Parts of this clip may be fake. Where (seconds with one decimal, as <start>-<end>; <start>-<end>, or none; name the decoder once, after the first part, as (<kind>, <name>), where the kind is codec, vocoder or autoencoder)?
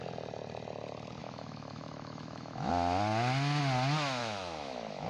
1.2-2.7 (autoencoder, DAC-VAE); 4.2-5.1